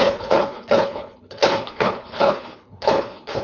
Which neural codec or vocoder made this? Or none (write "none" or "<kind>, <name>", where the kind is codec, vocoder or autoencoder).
codec, HILCodec